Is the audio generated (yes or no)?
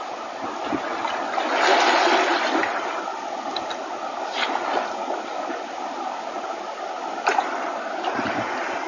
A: no